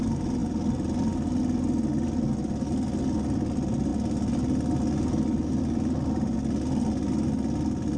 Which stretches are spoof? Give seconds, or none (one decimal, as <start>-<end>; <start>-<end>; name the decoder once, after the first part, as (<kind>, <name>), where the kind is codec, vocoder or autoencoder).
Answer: none